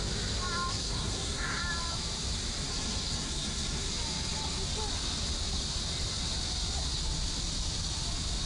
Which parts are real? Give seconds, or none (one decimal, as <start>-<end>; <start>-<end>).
0.0-0.7; 1.6-2.7; 3.9-8.5